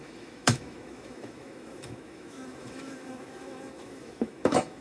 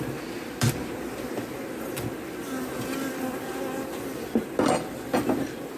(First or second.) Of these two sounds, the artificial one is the first